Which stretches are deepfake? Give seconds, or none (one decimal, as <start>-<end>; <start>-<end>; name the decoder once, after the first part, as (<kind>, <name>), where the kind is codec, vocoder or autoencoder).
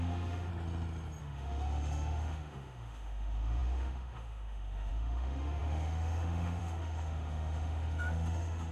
0.0-0.5 (autoencoder, DAC-VAE); 1.2-8.7